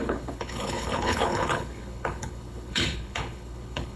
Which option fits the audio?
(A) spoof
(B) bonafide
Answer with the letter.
A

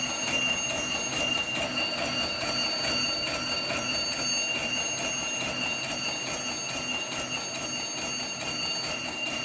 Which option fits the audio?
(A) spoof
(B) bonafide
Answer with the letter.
B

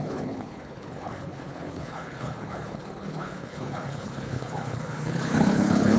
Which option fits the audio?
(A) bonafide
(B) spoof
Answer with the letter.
B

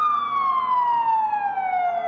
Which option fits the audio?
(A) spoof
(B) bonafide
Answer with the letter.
B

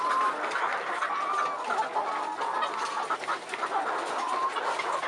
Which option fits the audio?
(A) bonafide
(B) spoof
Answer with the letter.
A